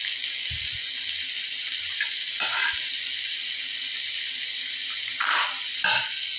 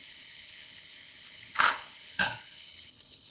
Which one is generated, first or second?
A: second